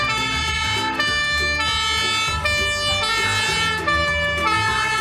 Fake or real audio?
real